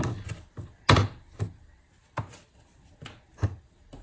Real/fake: real